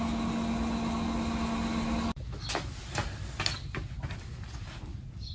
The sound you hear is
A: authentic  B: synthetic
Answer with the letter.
A